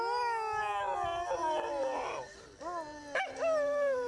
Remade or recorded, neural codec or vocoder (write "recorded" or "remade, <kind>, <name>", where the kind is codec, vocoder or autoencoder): recorded